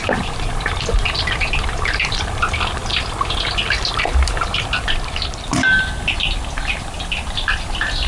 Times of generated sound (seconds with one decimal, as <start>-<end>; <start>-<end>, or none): none